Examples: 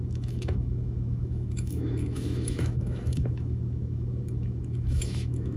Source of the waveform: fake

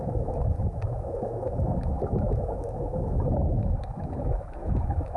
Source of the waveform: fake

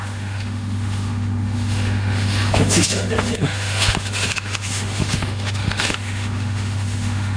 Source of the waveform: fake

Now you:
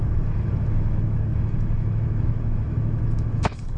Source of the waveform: fake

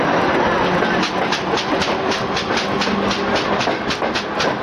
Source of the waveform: real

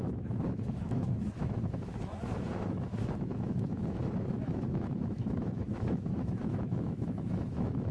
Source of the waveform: fake